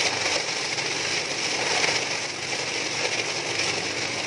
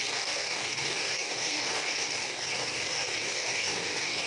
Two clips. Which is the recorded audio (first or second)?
first